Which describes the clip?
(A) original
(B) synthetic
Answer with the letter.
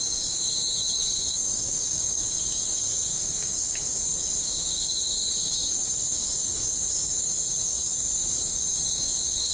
B